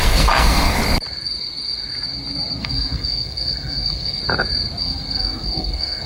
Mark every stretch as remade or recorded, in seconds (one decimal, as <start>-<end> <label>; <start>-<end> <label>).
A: 0.0-0.8 remade; 0.8-2.6 recorded; 2.6-4.2 remade; 4.2-4.8 recorded; 4.8-6.1 remade